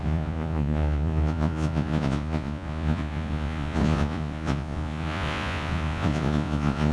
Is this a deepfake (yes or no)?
yes